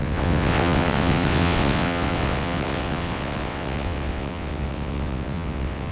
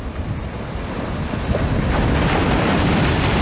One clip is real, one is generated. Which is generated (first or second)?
first